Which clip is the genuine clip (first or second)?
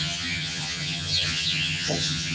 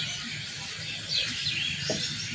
second